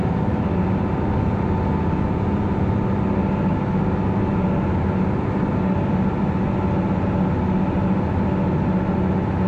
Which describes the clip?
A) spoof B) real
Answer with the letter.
B